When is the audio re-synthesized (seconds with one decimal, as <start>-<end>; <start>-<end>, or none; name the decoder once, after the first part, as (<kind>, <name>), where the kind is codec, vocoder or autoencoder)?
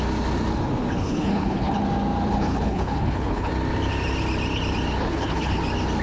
1.0-1.8 (codec, HILCodec); 2.3-3.5; 5.0-5.6